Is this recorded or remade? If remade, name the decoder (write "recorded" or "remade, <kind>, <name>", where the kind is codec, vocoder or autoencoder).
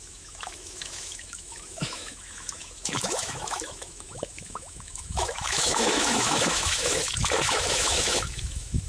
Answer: remade, autoencoder, DAC-VAE